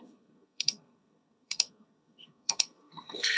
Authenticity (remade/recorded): remade